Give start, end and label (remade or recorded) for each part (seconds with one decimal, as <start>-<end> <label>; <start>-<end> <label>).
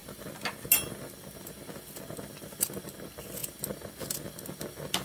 0.0-5.0 recorded